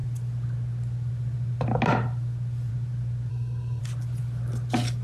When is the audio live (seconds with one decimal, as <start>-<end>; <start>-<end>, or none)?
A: 0.0-3.3; 3.8-5.0